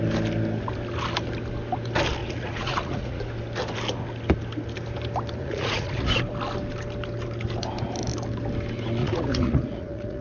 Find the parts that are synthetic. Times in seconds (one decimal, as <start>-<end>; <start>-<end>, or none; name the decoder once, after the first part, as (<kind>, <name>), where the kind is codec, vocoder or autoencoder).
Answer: 2.2-3.2 (vocoder, Vocos); 5.4-6.1; 9.0-10.2